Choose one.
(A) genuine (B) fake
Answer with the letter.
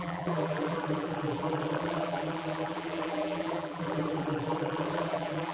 B